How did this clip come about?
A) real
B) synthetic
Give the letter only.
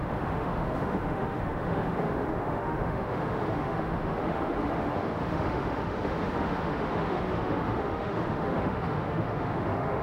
B